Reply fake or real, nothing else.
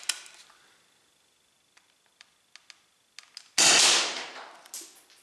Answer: real